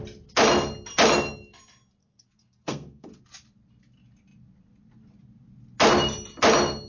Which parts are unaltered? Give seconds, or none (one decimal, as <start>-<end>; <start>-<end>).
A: 0.0-2.0; 3.2-6.9